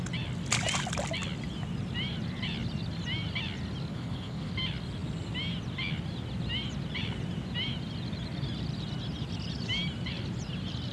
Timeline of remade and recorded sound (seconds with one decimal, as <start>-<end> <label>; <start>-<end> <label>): 0.0-3.9 recorded; 3.9-4.5 remade; 4.5-10.9 recorded